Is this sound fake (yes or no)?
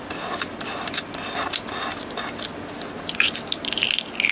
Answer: no